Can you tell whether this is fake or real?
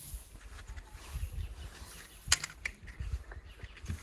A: real